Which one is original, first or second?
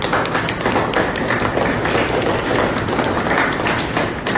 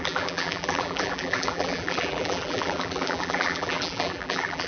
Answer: first